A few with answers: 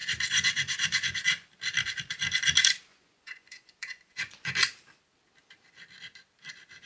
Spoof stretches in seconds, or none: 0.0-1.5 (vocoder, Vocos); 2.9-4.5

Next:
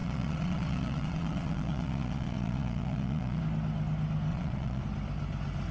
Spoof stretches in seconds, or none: 0.0-3.4 (vocoder, Vocos); 4.3-4.8